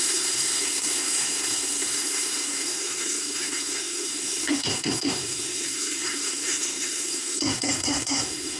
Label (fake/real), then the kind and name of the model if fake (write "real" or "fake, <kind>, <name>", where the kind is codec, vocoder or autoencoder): fake, codec, SNAC